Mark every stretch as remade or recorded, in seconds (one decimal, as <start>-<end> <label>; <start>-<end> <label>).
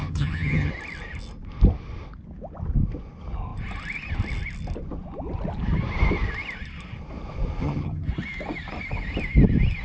0.0-0.7 remade; 0.7-7.6 recorded; 7.6-8.1 remade; 8.1-9.8 recorded